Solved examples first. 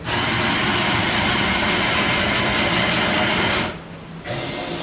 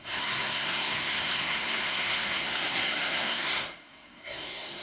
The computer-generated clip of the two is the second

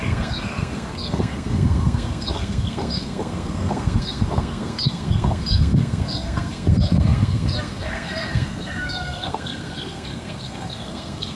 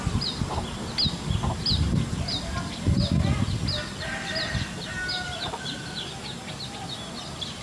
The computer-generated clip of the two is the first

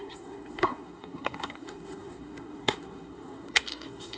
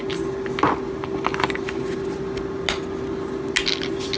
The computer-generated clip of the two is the first